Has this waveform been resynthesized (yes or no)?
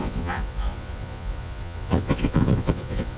yes